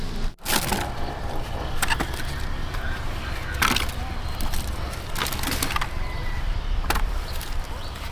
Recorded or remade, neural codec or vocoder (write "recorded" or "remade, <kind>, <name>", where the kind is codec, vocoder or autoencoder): recorded